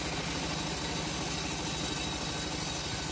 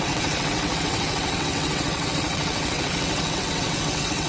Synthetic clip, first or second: second